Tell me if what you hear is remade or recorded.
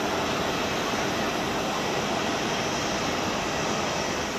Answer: recorded